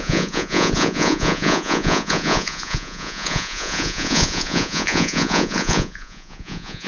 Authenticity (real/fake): fake